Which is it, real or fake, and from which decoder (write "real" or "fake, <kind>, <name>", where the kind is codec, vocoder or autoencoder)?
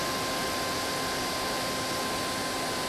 real